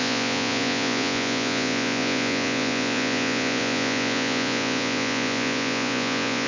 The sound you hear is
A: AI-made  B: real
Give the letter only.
A